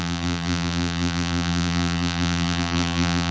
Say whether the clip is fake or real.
fake